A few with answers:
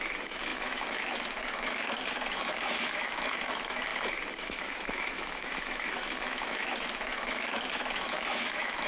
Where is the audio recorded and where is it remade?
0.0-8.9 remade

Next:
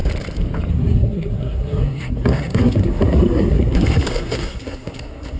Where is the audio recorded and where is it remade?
0.0-0.7 recorded; 0.7-5.4 remade

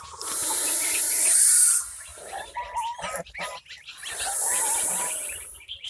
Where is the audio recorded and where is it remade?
0.0-2.1 remade; 2.1-4.6 recorded; 4.6-5.9 remade

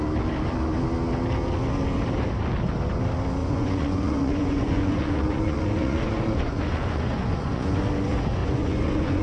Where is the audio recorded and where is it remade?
0.0-3.4 recorded; 3.4-7.8 remade; 7.8-8.4 recorded; 8.4-9.2 remade

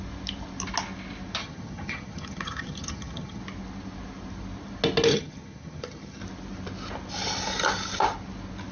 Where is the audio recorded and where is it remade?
0.0-1.4 recorded; 1.4-3.4 remade; 3.4-5.1 recorded; 5.1-6.2 remade; 6.2-8.7 recorded

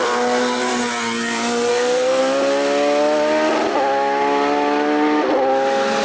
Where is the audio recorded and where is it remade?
0.0-1.7 recorded; 1.7-2.2 remade; 2.2-6.0 recorded

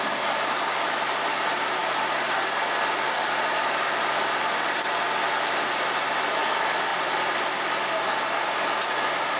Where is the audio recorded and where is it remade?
0.0-9.4 recorded

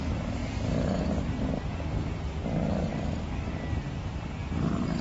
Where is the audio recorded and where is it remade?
0.0-5.0 recorded